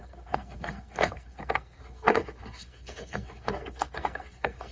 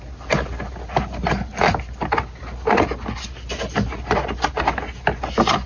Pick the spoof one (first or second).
first